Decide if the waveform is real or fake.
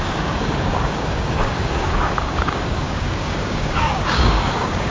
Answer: fake